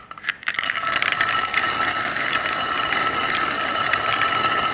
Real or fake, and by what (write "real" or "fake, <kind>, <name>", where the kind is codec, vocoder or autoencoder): real